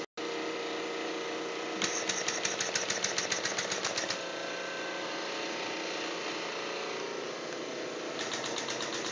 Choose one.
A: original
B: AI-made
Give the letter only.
A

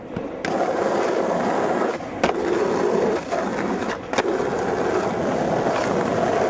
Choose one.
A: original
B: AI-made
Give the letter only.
A